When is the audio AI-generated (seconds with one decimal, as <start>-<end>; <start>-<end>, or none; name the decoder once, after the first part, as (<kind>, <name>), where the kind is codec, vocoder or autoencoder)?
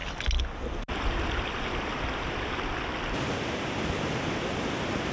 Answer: none